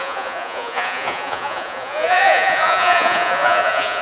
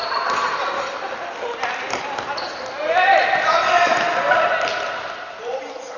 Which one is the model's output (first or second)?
first